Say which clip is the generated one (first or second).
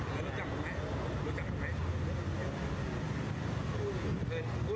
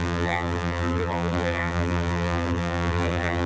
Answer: second